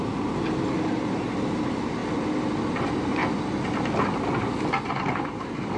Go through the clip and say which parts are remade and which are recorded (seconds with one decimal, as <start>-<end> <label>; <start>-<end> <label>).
0.0-2.0 remade; 2.0-2.7 recorded; 2.7-3.2 remade; 3.2-4.9 recorded; 4.9-5.8 remade

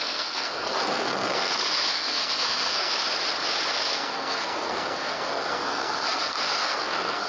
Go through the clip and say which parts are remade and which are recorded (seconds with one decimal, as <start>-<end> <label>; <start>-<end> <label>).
0.0-2.9 remade; 2.9-3.7 recorded; 3.7-7.3 remade

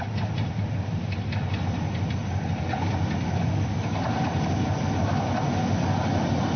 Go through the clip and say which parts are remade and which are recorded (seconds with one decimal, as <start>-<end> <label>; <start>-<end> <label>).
0.0-6.6 recorded

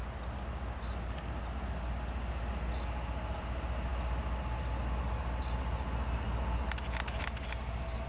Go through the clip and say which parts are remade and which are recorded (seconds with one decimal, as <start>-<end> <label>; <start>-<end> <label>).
0.0-8.1 recorded

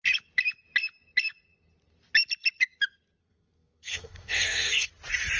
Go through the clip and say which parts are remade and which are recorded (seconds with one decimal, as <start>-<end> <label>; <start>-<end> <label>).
0.0-3.2 recorded; 3.2-4.9 remade; 4.9-5.4 recorded

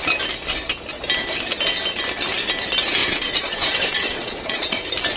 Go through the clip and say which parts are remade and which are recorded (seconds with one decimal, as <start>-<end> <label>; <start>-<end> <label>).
0.0-3.0 recorded; 3.0-4.8 remade; 4.8-5.2 recorded

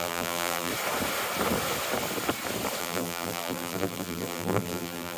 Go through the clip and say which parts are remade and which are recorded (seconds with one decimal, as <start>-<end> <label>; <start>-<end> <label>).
0.0-0.7 remade; 0.7-2.8 recorded; 2.8-5.2 remade

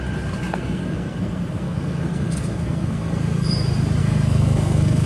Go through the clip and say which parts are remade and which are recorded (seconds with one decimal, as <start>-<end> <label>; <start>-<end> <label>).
0.0-0.5 recorded; 0.5-3.5 remade; 3.5-4.0 recorded; 4.0-5.1 remade